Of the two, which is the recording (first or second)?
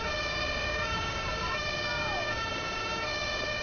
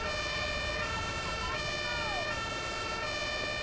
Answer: second